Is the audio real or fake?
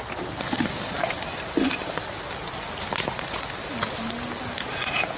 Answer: real